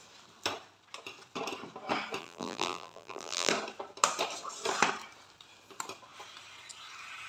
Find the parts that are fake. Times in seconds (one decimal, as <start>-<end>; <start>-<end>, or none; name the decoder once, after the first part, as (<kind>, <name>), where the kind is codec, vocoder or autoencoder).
2.2-3.5 (vocoder, BigVGAN v2)

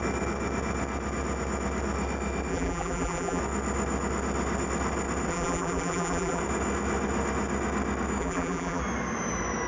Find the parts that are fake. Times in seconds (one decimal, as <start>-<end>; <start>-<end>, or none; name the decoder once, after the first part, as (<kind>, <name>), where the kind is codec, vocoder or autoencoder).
2.5-3.4 (vocoder, BigVGAN v2); 5.3-6.4; 8.2-8.8

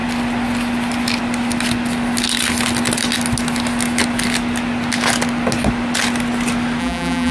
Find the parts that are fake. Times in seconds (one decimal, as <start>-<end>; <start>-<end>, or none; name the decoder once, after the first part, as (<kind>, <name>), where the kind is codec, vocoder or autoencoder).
6.8-7.3 (vocoder, BigVGAN v2)

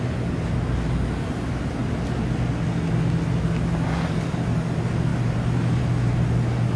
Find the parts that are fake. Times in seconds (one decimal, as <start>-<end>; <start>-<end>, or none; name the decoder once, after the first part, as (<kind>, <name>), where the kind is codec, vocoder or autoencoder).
none

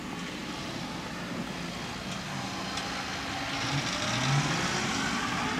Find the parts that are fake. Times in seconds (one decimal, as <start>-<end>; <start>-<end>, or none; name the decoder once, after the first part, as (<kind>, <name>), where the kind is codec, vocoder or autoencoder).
none